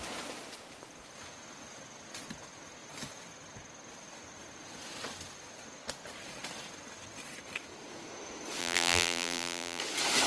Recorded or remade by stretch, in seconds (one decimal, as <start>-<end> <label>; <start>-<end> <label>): 0.0-8.6 recorded; 8.6-9.8 remade; 9.8-10.3 recorded